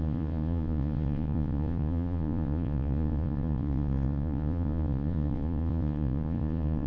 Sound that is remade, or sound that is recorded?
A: remade